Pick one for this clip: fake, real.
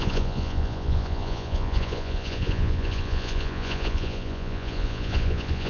fake